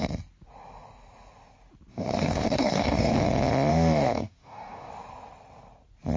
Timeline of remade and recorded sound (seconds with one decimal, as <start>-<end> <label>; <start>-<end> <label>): 0.0-1.9 recorded; 1.9-3.2 remade; 3.2-3.7 recorded; 3.7-4.9 remade; 4.9-6.2 recorded